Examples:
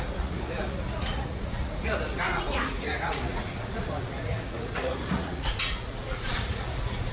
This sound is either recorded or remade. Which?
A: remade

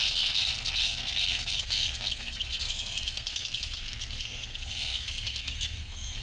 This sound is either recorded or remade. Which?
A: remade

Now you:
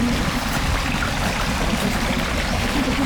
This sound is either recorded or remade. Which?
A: recorded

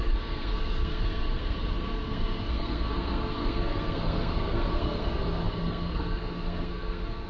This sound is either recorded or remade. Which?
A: remade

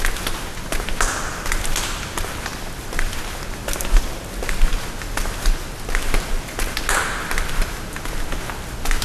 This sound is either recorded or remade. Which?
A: recorded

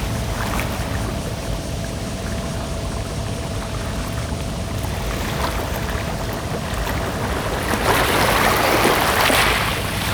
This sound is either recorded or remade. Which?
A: recorded